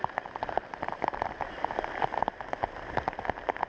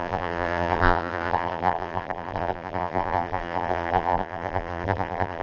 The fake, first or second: second